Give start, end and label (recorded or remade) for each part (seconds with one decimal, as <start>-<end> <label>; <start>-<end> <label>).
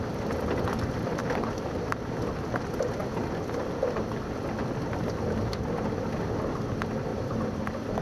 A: 0.0-1.2 recorded; 1.2-2.2 remade; 2.2-7.1 recorded; 7.1-8.0 remade